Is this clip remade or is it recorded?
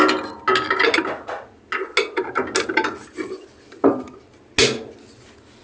recorded